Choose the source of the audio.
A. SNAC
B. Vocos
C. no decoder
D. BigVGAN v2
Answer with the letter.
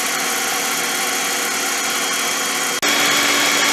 C